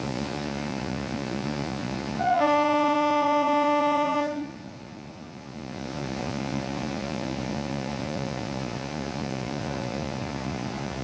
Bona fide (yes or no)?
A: no